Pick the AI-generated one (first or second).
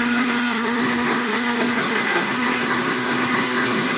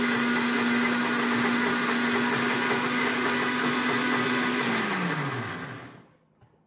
first